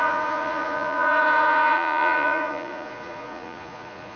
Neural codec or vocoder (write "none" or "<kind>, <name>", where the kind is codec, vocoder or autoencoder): vocoder, Vocos